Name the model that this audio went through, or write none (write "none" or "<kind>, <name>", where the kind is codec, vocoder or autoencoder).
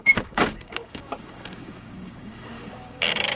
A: codec, DAC